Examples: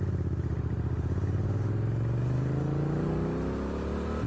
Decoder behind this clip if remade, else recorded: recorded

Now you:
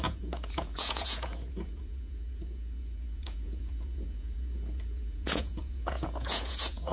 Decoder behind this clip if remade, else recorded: remade, vocoder, Vocos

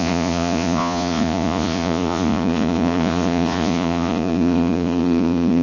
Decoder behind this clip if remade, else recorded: remade, vocoder, Vocos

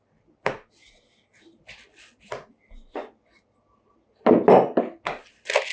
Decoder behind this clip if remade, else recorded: recorded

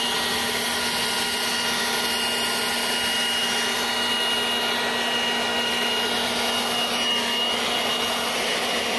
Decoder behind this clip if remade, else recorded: recorded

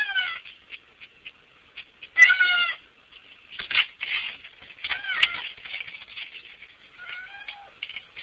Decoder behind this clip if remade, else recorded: recorded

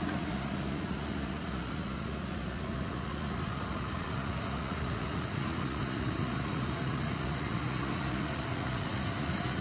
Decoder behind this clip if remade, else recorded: remade, vocoder, Vocos